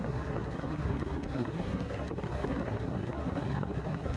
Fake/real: fake